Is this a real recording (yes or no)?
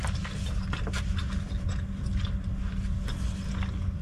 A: yes